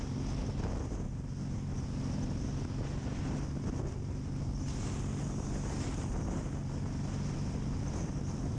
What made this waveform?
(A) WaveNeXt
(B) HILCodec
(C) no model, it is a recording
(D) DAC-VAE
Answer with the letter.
C